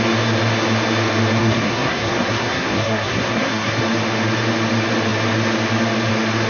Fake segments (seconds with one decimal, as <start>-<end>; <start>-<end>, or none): 1.4-3.8